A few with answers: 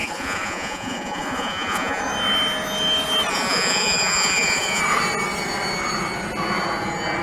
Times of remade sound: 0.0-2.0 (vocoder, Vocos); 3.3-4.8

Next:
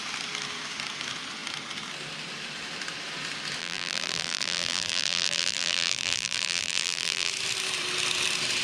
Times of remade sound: 3.6-7.3 (vocoder, BigVGAN v2)

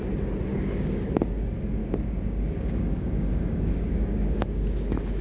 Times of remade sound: 0.5-1.2 (codec, DAC); 1.8-5.2

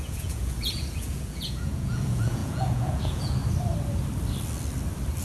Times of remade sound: 0.0-3.4 (vocoder, Vocos)